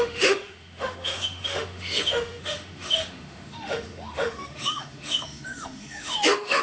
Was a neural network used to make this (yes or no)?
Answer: yes